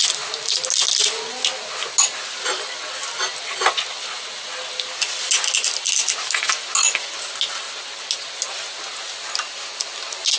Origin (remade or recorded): recorded